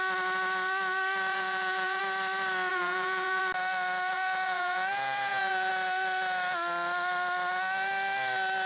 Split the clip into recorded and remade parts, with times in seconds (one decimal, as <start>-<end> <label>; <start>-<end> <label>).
0.0-1.3 recorded; 1.3-2.0 remade; 2.0-2.7 recorded; 2.7-3.4 remade; 3.4-4.1 recorded; 4.1-5.7 remade; 5.7-8.7 recorded